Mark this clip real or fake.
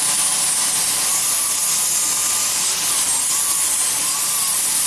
real